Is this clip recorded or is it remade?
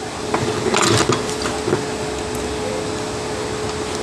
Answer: recorded